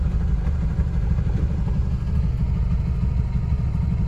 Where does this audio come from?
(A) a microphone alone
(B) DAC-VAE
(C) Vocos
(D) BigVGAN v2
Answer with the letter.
A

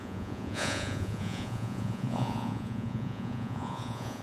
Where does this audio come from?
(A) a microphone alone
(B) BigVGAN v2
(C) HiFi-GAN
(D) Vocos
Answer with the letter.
D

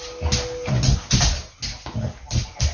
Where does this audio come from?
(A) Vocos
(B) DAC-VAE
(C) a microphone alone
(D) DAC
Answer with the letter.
C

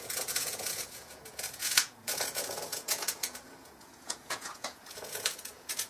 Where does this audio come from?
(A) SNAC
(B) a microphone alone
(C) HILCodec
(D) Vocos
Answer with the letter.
D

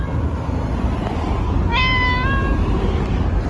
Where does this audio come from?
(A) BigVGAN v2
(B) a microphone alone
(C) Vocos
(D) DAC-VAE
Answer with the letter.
B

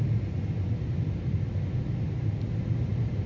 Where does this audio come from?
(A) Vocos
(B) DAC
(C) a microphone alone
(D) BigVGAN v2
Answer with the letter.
C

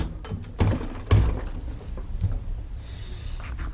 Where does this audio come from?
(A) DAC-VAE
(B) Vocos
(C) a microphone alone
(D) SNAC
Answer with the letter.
C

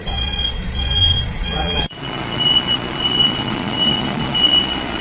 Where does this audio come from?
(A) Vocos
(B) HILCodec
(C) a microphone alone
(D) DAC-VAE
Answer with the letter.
A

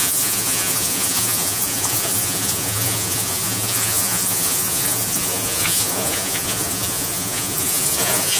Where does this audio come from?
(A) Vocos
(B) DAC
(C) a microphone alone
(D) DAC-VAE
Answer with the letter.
A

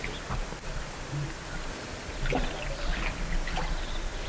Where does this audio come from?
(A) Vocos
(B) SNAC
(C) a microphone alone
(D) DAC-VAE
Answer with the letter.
C